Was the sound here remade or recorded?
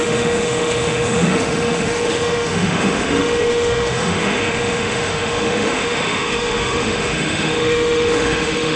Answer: remade